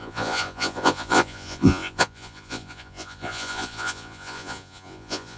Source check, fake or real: fake